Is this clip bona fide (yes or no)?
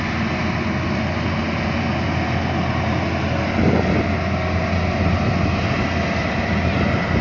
yes